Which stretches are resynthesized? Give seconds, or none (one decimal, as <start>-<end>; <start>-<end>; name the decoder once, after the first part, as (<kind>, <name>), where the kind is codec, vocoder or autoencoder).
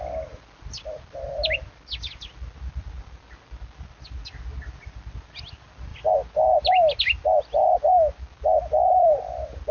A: none